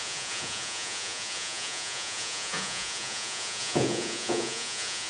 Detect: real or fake fake